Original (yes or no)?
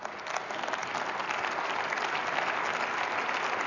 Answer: yes